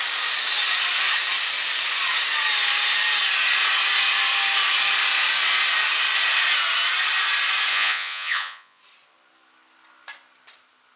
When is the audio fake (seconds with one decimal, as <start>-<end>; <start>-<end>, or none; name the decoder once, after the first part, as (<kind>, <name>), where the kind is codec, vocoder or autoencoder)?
7.7-8.8 (vocoder, Vocos)